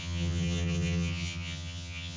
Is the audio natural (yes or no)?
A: no